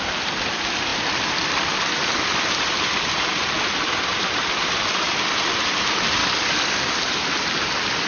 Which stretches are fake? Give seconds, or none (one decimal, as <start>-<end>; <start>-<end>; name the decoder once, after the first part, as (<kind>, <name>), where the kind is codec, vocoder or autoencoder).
6.2-7.1 (codec, DAC)